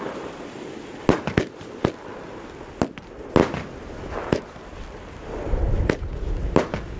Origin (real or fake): real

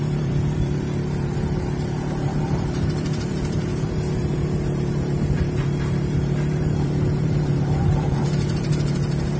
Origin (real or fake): fake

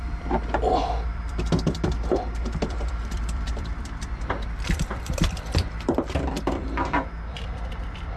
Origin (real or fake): fake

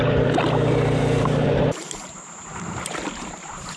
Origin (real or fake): fake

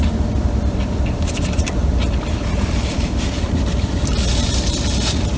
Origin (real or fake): fake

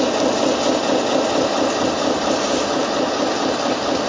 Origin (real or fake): real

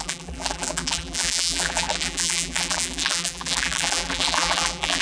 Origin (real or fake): fake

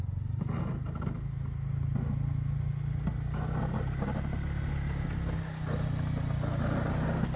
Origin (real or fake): real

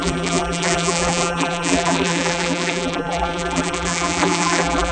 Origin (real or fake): fake